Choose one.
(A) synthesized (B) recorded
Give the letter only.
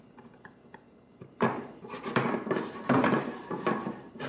A